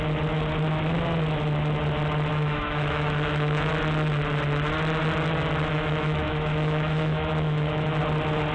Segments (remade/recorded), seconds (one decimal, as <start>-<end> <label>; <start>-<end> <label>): 0.0-2.3 recorded; 2.3-3.7 remade; 3.7-5.7 recorded; 5.7-8.0 remade; 8.0-8.5 recorded